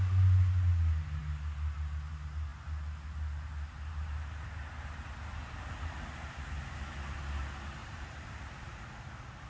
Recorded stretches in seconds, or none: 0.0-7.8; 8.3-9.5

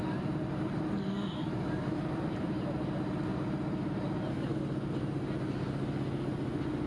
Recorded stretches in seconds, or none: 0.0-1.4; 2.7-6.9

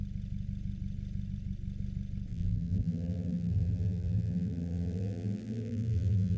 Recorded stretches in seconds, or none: 0.0-2.3

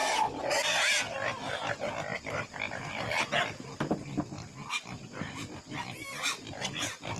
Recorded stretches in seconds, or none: 0.0-2.1; 3.9-7.2

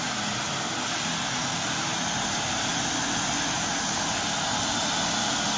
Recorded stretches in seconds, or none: 0.0-5.6

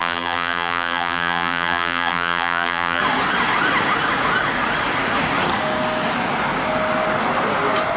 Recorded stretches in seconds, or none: 3.0-8.0

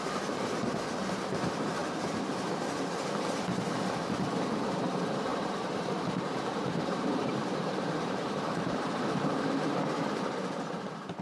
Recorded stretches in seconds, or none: 0.0-5.3; 9.9-11.2